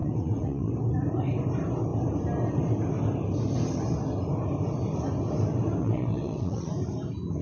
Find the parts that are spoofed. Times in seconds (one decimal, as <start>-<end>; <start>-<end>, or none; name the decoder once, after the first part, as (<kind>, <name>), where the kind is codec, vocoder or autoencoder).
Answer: 0.0-0.7 (vocoder, WaveNeXt); 5.8-6.7